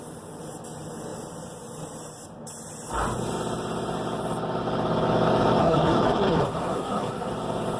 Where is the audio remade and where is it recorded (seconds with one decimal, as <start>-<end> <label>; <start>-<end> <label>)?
0.0-5.6 recorded; 5.6-7.3 remade; 7.3-7.8 recorded